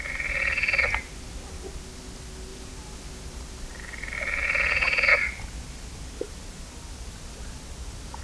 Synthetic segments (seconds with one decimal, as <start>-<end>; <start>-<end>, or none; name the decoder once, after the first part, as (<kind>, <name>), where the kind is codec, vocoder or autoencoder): 2.5-3.4 (vocoder, BigVGAN v2)